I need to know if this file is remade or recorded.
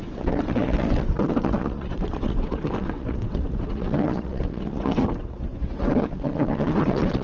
remade